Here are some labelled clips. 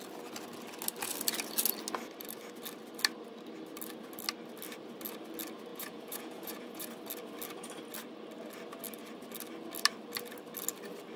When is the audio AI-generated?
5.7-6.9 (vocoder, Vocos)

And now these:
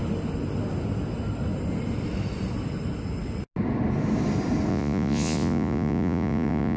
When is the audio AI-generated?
4.7-6.8 (vocoder, Vocos)

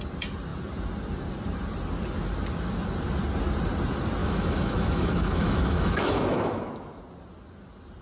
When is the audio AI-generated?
4.2-7.0 (autoencoder, DAC-VAE)